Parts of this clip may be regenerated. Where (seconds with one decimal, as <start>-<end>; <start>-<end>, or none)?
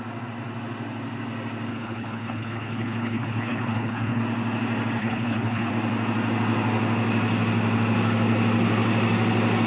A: 1.7-4.2; 5.0-5.7